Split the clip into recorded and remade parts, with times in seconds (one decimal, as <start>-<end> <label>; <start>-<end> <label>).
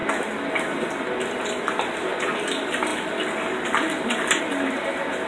0.0-5.3 recorded